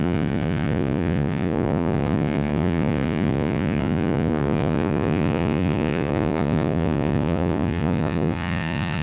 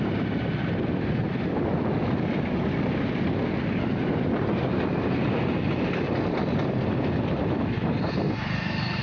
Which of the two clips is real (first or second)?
second